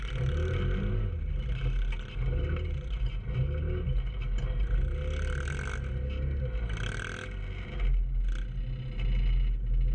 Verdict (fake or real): real